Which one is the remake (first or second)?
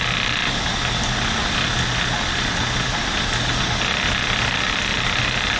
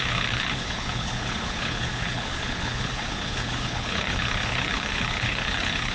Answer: second